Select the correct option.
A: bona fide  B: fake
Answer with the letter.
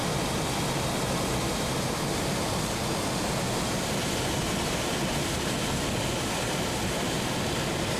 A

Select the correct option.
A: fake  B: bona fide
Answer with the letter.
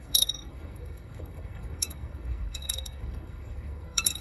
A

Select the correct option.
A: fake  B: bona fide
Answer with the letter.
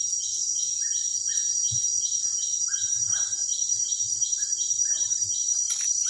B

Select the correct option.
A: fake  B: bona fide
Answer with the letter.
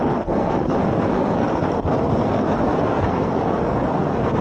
A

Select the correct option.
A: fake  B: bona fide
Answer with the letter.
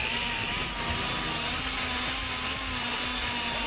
B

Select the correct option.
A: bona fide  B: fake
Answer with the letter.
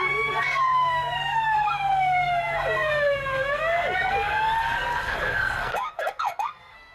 B